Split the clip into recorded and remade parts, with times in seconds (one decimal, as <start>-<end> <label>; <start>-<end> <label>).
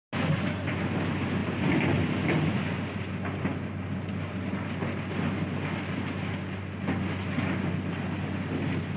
0.0-9.0 recorded